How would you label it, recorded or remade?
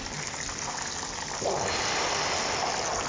recorded